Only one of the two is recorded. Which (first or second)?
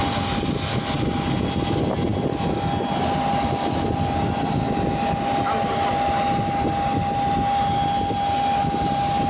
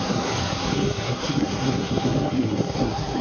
first